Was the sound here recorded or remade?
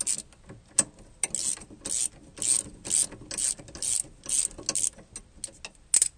recorded